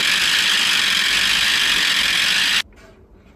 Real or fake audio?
real